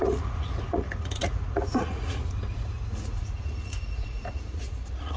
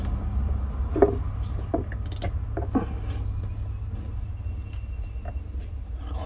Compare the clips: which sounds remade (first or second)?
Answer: first